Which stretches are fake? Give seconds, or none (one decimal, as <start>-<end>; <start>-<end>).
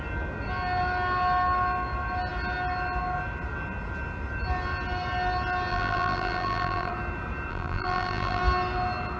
5.7-6.9; 7.5-8.4